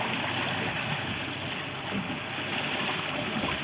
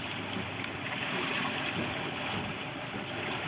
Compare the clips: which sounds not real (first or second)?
second